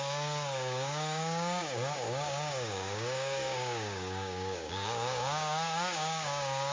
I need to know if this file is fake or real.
fake